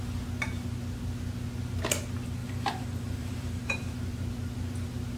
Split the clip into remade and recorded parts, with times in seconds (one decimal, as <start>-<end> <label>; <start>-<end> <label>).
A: 0.0-2.4 recorded; 2.4-3.9 remade; 3.9-5.2 recorded